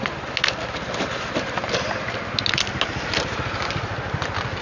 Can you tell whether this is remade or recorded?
recorded